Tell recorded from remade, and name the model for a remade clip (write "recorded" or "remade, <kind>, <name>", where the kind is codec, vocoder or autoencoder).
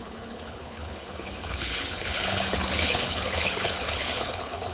remade, codec, HILCodec